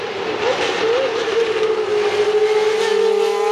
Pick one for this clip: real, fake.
real